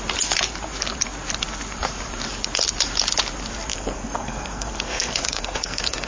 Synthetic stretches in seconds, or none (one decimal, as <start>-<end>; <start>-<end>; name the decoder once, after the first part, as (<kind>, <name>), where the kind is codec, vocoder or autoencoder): 3.7-6.1 (codec, SNAC)